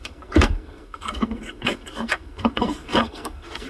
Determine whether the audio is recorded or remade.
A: remade